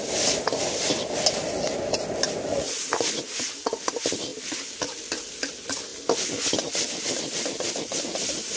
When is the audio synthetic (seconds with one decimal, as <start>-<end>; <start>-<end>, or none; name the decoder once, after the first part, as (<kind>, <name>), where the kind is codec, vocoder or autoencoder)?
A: 2.5-3.1 (vocoder, Vocos)